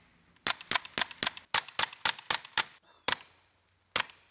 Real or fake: real